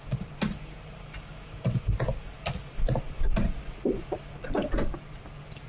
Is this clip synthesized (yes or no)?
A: no